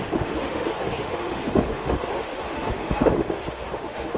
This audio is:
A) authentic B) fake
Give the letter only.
B